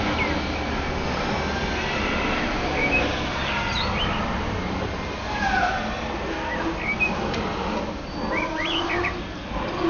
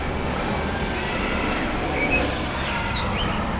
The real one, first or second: first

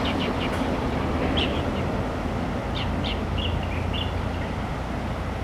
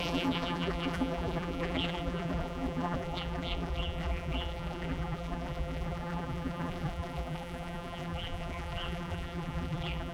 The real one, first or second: first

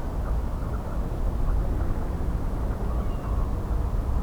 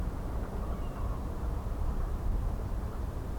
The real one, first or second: first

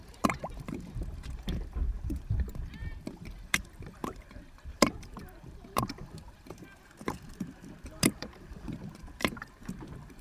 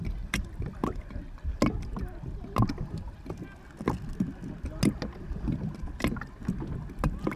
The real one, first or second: second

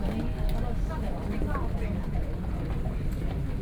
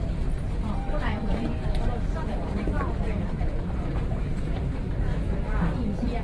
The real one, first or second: first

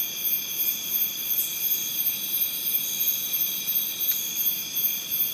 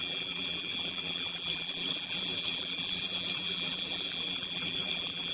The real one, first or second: first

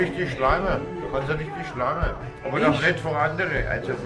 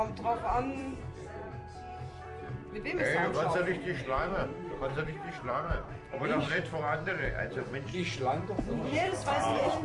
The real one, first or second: first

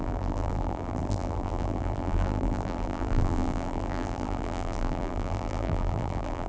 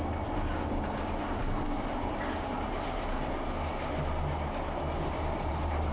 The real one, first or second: second